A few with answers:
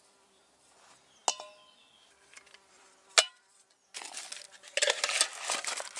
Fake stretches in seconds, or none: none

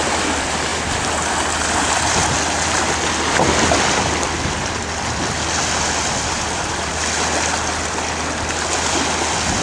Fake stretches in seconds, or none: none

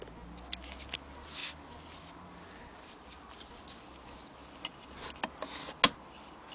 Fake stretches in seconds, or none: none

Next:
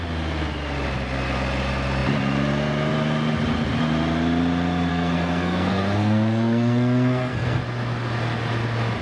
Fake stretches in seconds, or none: 4.9-7.6 (codec, SNAC)

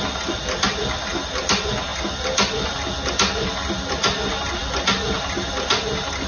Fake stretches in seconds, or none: none

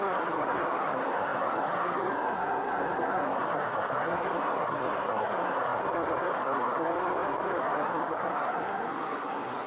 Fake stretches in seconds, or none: 0.0-9.7 (codec, SNAC)